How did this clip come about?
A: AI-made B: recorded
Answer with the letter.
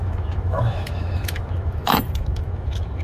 A